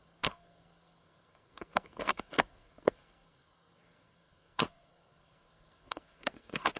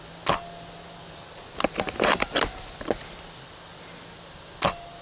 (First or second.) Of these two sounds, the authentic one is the second